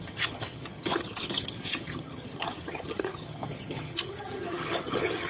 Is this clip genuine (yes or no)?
no